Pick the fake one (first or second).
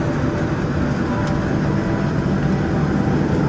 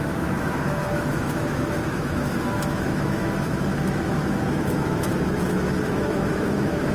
second